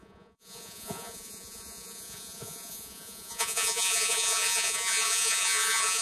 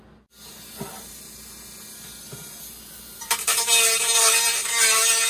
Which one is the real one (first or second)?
second